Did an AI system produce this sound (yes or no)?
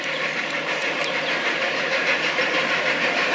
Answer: yes